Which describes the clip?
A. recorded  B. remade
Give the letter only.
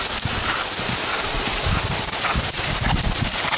A